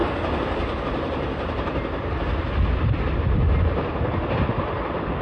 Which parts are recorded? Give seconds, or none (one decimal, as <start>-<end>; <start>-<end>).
0.0-5.2